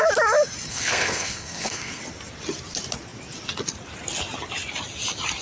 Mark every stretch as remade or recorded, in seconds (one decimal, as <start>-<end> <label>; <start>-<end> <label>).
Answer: 0.0-0.7 recorded; 0.7-2.0 remade; 2.0-5.4 recorded